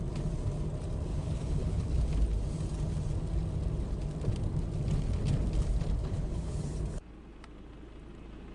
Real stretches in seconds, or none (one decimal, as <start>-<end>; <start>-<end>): 0.0-1.1; 1.8-6.0; 6.6-8.5

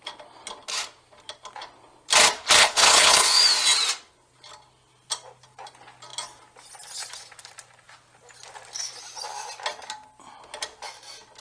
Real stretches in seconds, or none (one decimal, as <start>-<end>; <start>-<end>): 0.0-2.6; 3.4-11.4

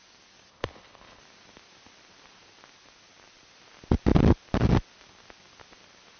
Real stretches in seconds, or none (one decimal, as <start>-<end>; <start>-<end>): 0.0-0.5; 1.2-6.2

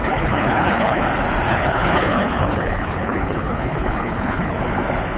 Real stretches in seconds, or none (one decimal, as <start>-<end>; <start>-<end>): 1.0-1.5; 4.6-5.2

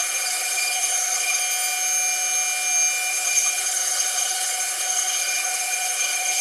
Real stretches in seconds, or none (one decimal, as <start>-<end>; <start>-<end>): 1.4-3.1

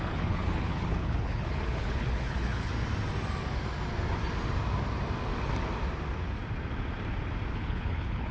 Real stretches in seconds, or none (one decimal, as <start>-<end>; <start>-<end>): 2.7-7.5